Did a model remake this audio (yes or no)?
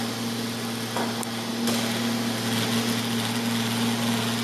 no